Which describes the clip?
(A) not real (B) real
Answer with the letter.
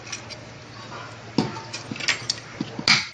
B